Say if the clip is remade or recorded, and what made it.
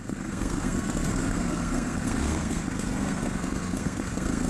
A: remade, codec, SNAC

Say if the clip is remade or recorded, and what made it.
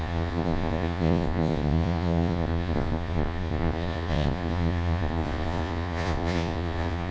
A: remade, vocoder, Vocos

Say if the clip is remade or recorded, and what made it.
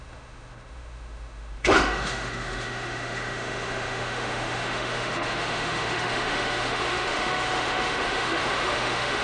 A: remade, autoencoder, DAC-VAE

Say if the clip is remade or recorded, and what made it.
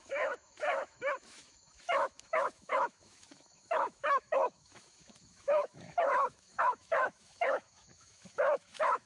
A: remade, autoencoder, DAC-VAE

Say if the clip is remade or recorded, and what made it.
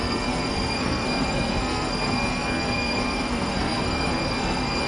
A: remade, codec, SNAC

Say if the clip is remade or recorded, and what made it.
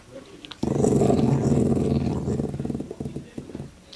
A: recorded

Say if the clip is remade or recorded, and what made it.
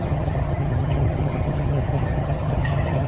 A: remade, vocoder, HiFi-GAN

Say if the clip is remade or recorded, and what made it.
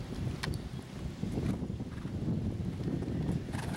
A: recorded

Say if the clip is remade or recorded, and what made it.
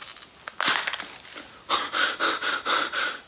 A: recorded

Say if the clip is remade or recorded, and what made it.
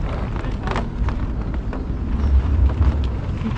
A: recorded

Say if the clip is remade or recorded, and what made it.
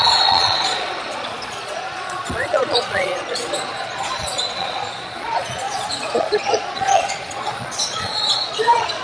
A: remade, vocoder, Vocos